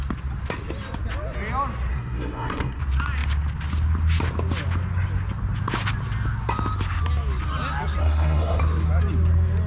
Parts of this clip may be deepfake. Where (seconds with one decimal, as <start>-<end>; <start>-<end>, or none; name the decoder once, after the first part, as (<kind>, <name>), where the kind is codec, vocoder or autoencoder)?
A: 1.9-2.8 (codec, SNAC); 8.0-8.6